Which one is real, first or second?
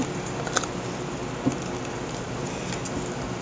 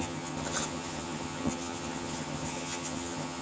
first